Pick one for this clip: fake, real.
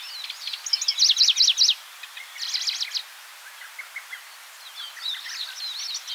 real